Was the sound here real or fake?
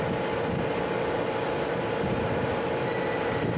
real